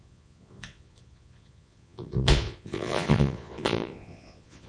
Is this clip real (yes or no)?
no